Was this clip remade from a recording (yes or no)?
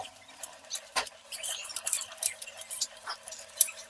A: yes